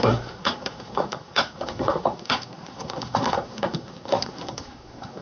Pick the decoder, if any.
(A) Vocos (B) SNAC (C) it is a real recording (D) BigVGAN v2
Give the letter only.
B